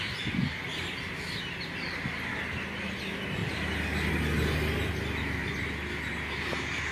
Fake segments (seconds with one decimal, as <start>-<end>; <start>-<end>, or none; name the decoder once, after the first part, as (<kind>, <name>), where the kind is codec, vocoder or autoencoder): none

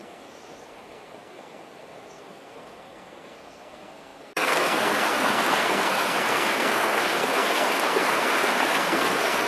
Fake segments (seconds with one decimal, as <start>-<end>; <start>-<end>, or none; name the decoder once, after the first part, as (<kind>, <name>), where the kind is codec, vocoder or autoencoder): 0.0-9.5 (codec, SNAC)

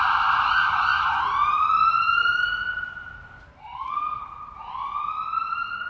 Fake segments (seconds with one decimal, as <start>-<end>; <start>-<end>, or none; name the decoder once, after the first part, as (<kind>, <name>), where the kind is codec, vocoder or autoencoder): 3.6-4.2 (codec, SNAC)

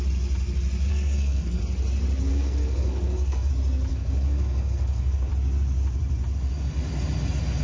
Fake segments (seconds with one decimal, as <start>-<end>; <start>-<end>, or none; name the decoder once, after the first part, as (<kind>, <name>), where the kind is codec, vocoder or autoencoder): 0.9-1.6 (codec, SNAC); 2.3-3.5; 3.9-5.3

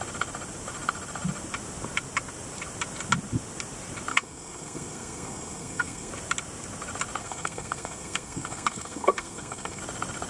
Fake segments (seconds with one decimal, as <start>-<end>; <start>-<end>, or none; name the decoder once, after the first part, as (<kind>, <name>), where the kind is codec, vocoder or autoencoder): 4.1-6.1 (codec, SNAC); 7.2-9.8